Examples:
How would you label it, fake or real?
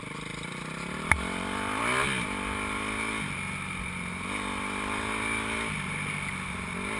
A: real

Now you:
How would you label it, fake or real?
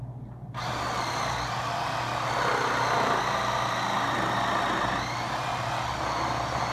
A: real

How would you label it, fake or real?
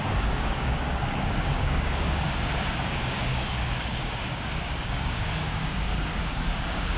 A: fake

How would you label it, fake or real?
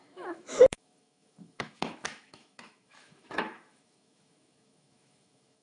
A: fake